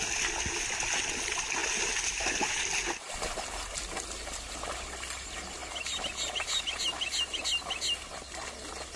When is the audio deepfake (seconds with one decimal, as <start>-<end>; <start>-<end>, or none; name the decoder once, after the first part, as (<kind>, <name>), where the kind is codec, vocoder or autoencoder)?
none